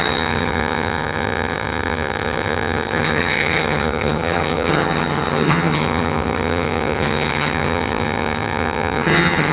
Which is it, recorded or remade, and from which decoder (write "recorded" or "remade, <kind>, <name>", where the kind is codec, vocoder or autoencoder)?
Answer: remade, vocoder, HiFi-GAN